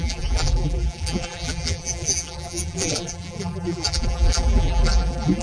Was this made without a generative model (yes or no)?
no